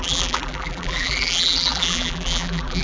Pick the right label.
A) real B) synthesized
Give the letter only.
B